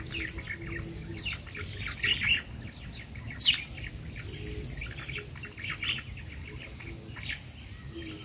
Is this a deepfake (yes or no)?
no